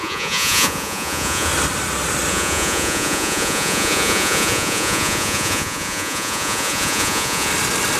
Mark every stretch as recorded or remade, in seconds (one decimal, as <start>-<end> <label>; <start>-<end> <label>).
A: 0.0-1.5 remade; 1.5-2.3 recorded; 2.3-7.5 remade; 7.5-8.0 recorded